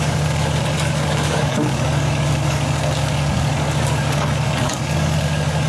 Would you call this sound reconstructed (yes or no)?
yes